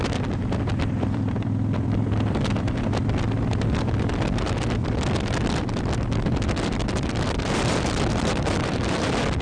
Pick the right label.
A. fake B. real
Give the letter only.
A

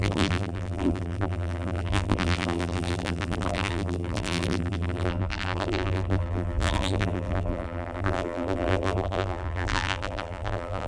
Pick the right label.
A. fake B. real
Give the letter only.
A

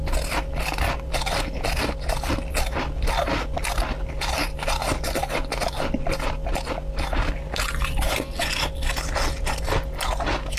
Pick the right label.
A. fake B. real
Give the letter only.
B